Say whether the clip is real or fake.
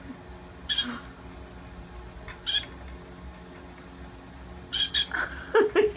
real